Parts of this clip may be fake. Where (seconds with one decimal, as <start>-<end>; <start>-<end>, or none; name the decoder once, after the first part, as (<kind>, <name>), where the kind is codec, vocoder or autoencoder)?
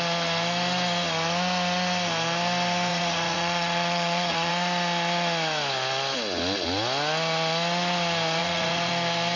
2.9-4.5 (vocoder, Vocos); 8.4-8.9